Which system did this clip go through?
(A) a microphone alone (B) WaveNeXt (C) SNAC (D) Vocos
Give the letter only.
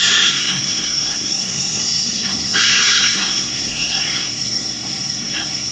C